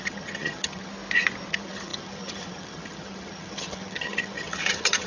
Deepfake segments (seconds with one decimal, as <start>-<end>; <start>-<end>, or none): 0.0-0.9; 1.5-5.1